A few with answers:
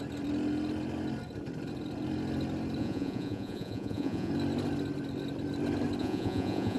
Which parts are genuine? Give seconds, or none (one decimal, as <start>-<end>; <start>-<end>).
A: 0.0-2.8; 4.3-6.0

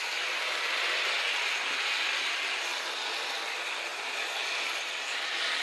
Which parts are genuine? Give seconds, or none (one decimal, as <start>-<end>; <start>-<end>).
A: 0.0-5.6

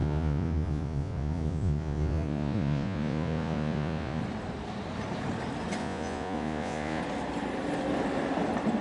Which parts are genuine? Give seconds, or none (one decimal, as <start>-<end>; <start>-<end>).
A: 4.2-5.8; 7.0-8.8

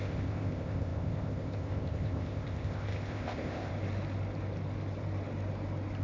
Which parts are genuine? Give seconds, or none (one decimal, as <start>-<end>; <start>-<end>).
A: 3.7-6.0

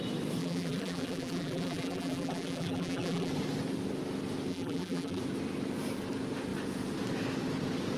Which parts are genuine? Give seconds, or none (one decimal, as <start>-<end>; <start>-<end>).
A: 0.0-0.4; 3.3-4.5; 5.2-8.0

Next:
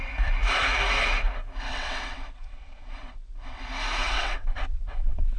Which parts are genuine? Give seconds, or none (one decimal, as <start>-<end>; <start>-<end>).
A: 0.0-1.7; 3.6-4.0